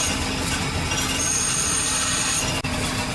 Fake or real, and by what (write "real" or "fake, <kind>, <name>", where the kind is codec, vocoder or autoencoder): real